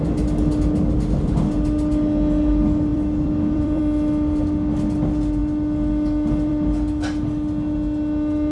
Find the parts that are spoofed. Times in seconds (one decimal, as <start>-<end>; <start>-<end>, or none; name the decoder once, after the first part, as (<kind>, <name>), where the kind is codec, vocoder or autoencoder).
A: 2.9-3.8 (vocoder, BigVGAN v2)